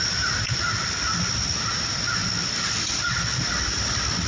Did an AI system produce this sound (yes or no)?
no